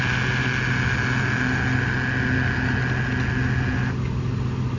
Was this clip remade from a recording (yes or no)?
no